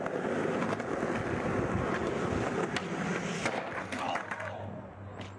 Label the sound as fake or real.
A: real